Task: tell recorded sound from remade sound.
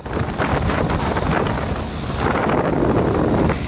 recorded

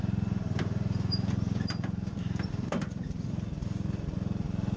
recorded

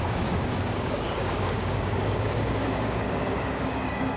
remade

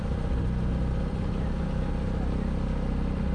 recorded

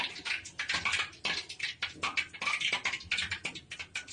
recorded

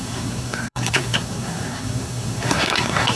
remade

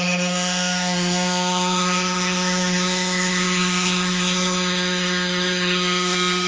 remade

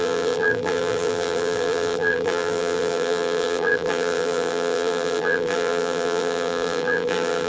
remade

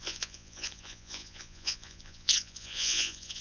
remade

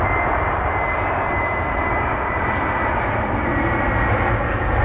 recorded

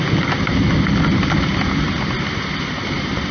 recorded